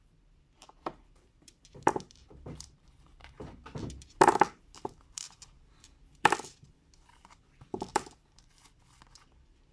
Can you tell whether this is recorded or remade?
remade